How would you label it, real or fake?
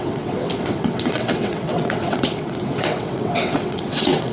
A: fake